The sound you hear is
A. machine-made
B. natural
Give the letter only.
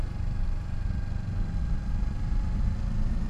B